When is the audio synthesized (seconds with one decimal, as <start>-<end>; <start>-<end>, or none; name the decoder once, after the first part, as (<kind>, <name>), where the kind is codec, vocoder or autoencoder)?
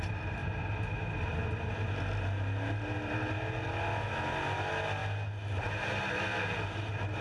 none